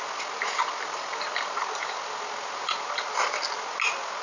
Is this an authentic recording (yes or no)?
yes